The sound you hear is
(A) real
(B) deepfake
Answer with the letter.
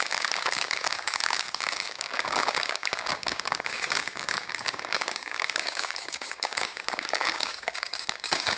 B